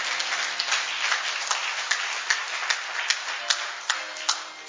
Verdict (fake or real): real